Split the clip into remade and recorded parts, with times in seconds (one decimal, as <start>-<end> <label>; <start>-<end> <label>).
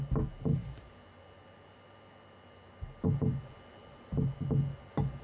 0.0-5.2 recorded